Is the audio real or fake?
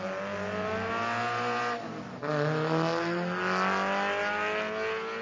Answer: real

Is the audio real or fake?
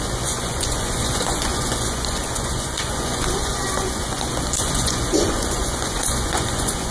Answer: fake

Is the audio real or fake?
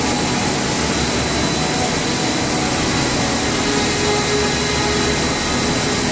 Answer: real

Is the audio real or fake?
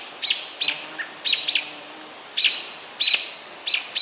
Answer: real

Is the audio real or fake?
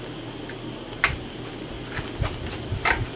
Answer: real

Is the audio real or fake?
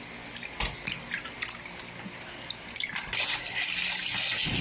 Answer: real